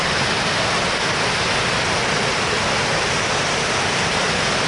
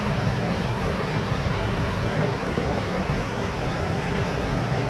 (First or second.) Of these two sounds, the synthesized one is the second